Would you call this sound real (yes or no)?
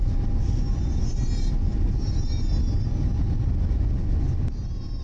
yes